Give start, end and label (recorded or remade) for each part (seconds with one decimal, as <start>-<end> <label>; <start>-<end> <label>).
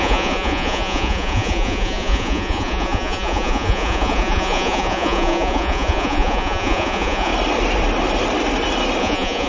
0.0-7.3 remade; 7.3-9.0 recorded; 9.0-9.5 remade